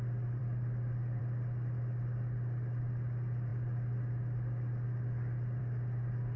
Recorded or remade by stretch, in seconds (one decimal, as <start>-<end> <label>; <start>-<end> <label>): 0.0-6.4 recorded